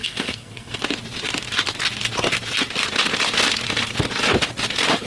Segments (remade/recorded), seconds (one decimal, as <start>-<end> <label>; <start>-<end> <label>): 0.0-0.8 remade; 0.8-5.1 recorded